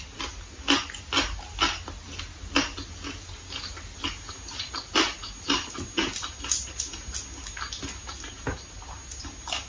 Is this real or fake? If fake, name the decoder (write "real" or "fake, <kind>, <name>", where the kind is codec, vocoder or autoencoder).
real